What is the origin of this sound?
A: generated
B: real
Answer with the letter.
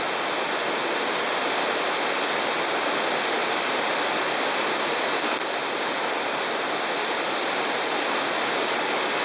B